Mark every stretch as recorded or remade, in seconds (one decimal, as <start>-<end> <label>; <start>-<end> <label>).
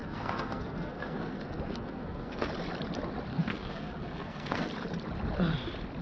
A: 0.0-2.5 remade; 2.5-3.3 recorded; 3.3-4.7 remade; 4.7-6.0 recorded